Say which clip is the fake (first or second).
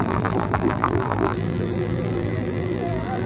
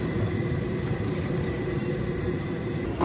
first